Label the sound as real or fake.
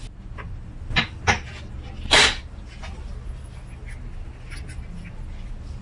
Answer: real